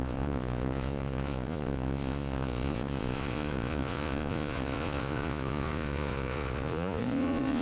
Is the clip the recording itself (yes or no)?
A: no